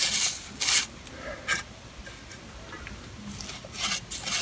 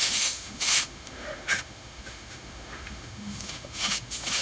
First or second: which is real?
first